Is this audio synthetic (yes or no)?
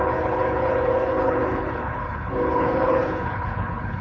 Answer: yes